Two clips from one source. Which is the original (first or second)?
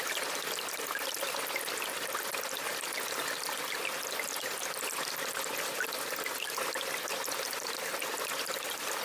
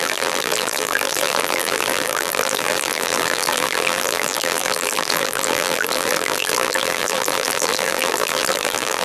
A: first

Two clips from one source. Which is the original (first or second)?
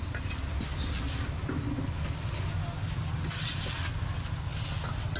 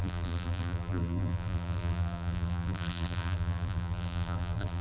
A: first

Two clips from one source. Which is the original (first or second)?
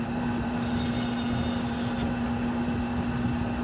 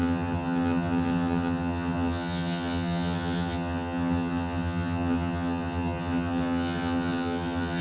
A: first